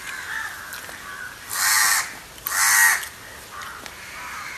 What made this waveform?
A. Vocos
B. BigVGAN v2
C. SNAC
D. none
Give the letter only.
D